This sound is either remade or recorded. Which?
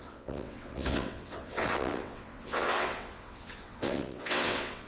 remade